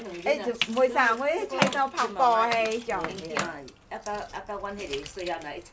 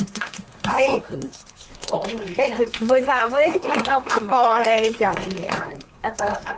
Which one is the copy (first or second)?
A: second